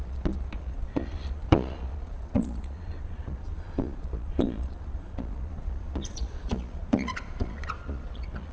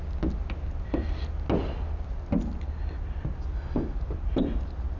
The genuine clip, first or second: second